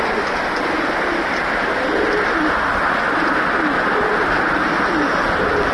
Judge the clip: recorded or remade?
recorded